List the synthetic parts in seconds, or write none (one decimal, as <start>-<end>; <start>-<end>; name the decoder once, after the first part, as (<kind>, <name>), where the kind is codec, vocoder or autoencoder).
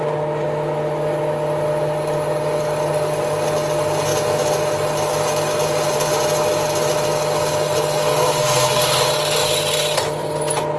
8.1-8.8 (codec, SNAC)